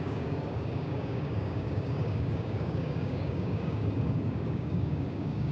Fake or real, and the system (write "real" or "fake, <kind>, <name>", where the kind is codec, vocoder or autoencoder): fake, codec, DAC